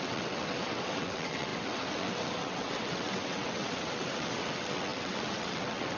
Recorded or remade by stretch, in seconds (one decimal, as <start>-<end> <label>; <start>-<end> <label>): 0.0-6.0 remade